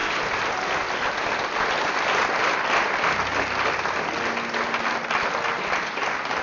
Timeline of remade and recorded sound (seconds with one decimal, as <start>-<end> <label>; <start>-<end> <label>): 0.0-6.4 recorded